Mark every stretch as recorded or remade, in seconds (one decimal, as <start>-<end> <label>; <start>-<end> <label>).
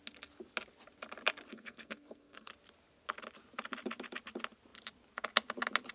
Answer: 0.0-1.5 recorded; 1.5-2.5 remade; 2.5-5.9 recorded